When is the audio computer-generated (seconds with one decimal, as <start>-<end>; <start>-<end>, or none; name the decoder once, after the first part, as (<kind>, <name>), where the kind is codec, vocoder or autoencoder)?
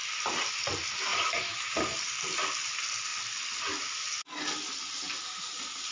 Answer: none